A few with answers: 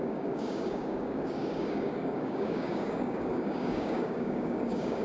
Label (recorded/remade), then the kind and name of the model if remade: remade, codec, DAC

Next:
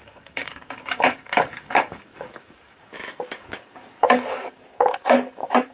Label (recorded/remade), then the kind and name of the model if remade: remade, codec, DAC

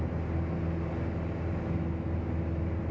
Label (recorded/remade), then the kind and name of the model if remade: recorded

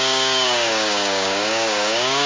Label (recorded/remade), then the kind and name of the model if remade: remade, codec, DAC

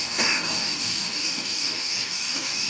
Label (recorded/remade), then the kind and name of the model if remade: remade, codec, DAC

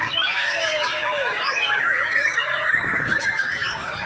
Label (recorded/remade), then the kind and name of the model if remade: remade, codec, DAC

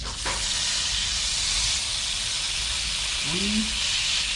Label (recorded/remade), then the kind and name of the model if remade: recorded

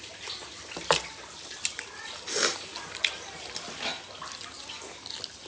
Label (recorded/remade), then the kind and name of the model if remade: recorded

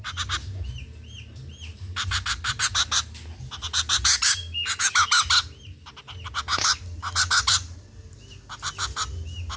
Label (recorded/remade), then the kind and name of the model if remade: recorded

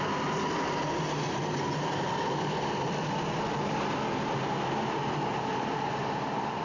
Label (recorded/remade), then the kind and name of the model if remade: recorded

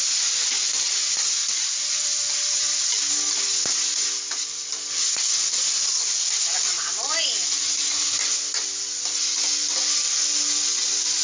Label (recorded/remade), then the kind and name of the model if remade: recorded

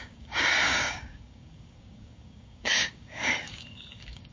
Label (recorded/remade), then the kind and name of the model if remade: remade, codec, DAC